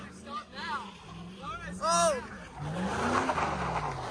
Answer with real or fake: real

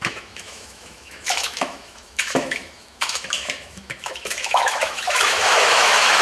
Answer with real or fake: fake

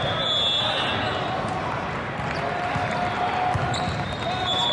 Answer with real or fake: real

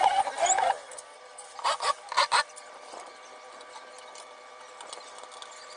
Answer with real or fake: real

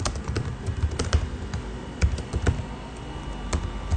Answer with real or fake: real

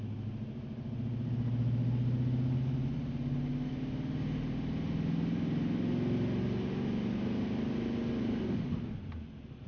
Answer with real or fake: real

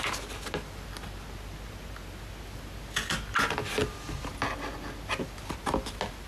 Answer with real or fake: real